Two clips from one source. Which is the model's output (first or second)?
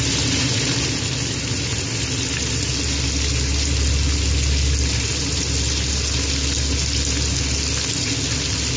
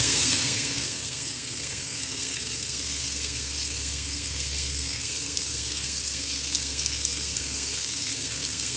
second